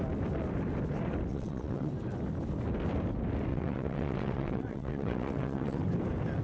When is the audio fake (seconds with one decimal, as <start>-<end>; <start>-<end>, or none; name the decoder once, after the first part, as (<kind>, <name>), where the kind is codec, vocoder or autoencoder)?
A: 1.3-1.9 (vocoder, WaveNeXt); 3.5-5.8